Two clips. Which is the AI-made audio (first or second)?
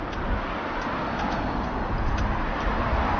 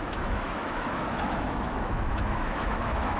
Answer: second